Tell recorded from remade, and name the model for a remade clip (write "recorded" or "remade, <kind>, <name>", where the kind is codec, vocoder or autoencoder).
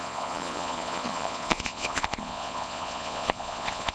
remade, vocoder, Vocos